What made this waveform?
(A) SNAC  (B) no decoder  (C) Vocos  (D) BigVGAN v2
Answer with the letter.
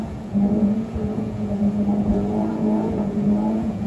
C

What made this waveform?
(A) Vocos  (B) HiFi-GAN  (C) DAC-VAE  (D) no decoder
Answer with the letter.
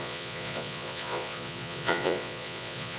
A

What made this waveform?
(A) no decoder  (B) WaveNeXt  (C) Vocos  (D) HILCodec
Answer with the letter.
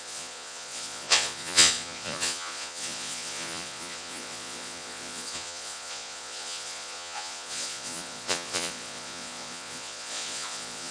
C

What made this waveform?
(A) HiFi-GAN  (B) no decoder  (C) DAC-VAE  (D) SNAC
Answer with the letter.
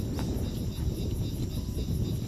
B